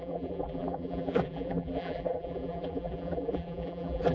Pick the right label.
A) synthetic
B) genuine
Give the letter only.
A